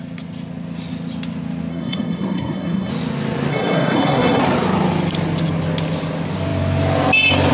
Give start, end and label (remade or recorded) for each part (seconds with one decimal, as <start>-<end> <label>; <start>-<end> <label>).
0.0-1.7 recorded; 1.7-2.9 remade; 2.9-3.5 recorded; 3.5-4.4 remade; 4.4-7.5 recorded